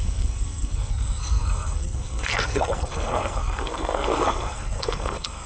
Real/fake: fake